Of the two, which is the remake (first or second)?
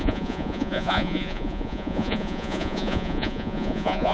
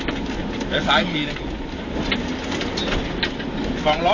first